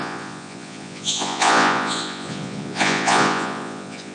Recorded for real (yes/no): no